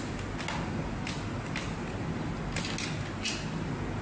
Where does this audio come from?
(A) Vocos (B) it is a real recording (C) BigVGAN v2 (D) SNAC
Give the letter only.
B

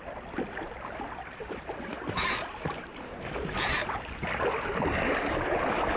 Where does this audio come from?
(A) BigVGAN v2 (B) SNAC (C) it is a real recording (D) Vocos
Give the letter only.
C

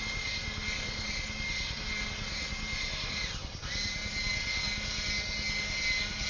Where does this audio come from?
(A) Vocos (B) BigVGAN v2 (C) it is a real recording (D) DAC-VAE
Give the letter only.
C